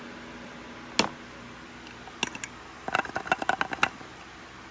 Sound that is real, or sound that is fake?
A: real